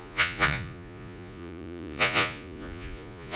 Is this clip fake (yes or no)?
yes